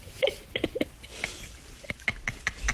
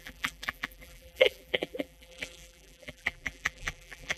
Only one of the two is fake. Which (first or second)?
second